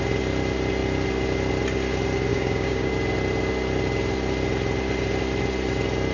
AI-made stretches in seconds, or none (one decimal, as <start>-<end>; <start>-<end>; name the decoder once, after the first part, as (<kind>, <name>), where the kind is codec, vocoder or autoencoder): 2.3-2.9 (codec, DAC)